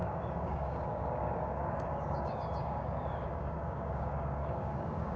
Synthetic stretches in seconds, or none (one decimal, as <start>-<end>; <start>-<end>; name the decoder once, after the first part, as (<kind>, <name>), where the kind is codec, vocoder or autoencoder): 0.0-5.2 (codec, DAC)